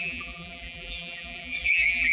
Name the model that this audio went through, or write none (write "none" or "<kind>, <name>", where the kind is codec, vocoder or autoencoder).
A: vocoder, BigVGAN v2